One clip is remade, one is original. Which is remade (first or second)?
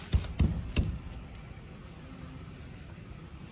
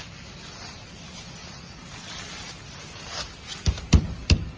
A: first